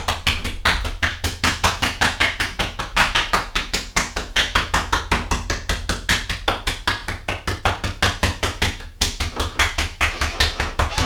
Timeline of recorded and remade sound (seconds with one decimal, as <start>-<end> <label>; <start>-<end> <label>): 0.0-1.1 recorded; 1.1-5.0 remade; 5.0-8.2 recorded; 8.2-11.1 remade